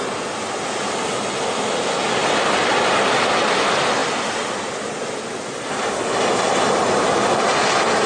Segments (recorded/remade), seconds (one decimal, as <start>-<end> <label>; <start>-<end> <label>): 0.0-8.1 recorded